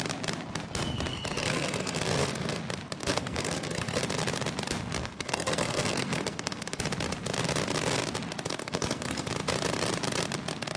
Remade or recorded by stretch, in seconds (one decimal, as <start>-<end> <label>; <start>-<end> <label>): 0.0-1.1 recorded; 1.1-2.6 remade; 2.6-3.0 recorded; 3.0-4.0 remade; 4.0-5.0 recorded; 5.0-6.8 remade; 6.8-8.6 recorded; 8.6-9.3 remade; 9.3-10.8 recorded